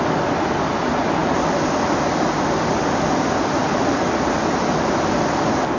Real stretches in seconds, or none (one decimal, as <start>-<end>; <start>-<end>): 0.0-5.8